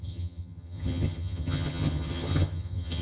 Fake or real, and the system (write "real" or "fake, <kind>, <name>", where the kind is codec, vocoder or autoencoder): fake, vocoder, HiFi-GAN